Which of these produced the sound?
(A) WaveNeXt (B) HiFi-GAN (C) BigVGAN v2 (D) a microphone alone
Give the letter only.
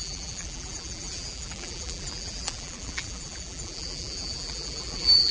C